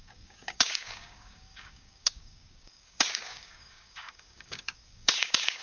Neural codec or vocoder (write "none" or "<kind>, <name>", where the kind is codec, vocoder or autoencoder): codec, DAC